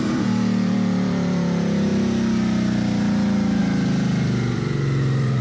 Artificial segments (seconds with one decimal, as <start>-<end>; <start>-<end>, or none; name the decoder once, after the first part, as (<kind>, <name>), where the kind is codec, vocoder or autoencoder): 0.0-1.9 (vocoder, BigVGAN v2); 3.6-5.4